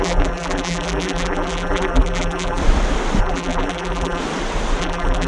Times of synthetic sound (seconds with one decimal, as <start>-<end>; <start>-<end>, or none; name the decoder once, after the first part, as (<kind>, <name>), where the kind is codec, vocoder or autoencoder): 0.0-2.6 (vocoder, BigVGAN v2); 3.2-4.2; 4.8-5.3